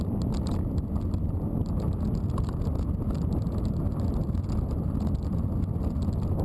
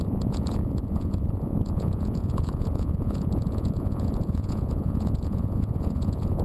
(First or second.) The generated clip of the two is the second